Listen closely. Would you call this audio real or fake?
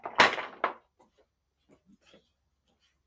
real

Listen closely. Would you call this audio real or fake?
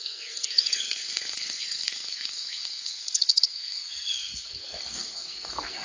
fake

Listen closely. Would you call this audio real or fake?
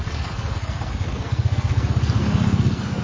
fake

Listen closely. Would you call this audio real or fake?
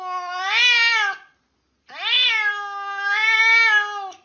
real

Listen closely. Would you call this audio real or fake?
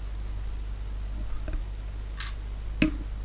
real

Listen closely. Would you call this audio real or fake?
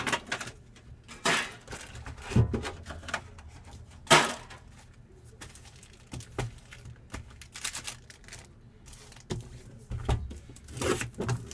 real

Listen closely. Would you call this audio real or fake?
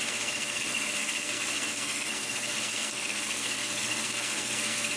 fake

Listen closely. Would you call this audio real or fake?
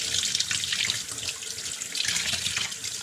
real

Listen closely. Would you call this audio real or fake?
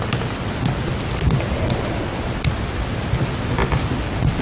real